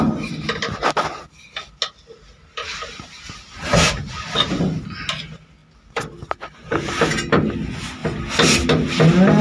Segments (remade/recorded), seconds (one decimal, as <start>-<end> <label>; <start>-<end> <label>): 0.0-5.6 recorded; 5.6-7.5 remade; 7.5-9.4 recorded